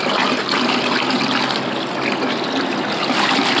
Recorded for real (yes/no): yes